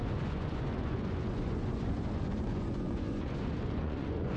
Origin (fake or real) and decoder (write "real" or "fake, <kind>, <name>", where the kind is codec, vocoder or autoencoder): fake, vocoder, Vocos